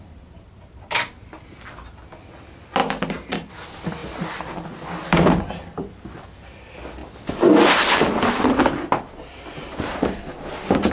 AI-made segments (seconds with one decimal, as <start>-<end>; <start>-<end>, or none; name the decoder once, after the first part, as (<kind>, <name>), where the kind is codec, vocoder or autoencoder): none